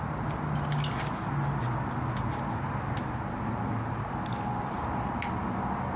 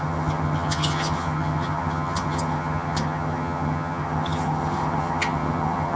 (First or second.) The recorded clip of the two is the first